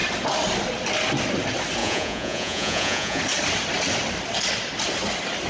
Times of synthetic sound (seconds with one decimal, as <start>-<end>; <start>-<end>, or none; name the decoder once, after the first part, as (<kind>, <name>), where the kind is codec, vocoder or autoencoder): 1.8-3.2 (vocoder, Vocos)